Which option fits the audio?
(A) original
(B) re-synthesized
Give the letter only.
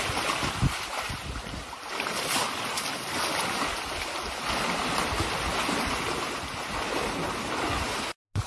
A